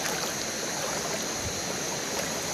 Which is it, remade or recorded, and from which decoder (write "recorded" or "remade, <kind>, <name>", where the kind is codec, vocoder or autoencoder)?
recorded